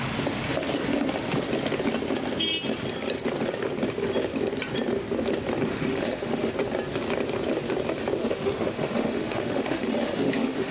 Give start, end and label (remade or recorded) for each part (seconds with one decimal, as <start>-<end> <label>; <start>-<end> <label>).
0.0-5.7 recorded; 5.7-6.5 remade; 6.5-8.2 recorded; 8.2-10.7 remade